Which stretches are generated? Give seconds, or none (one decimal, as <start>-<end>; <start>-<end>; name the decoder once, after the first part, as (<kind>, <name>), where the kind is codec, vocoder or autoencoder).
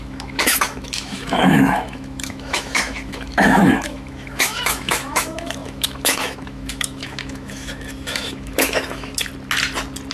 0.0-9.3 (autoencoder, DAC-VAE)